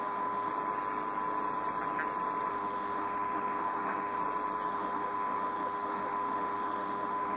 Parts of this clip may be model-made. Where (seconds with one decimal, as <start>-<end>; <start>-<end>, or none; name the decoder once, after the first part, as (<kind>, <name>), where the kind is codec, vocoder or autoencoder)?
0.0-0.5 (autoencoder, DAC-VAE); 2.5-4.2; 4.7-7.4